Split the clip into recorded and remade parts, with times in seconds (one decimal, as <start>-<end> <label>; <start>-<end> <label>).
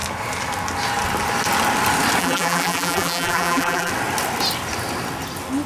0.0-2.2 recorded; 2.2-3.9 remade; 3.9-5.7 recorded